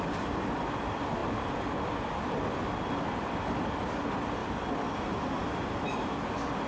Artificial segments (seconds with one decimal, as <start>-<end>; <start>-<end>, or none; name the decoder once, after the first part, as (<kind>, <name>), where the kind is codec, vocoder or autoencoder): 0.0-6.7 (vocoder, BigVGAN v2)